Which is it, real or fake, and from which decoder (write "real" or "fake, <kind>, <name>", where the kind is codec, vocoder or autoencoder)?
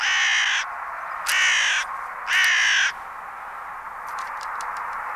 real